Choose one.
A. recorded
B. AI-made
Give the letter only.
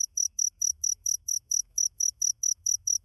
B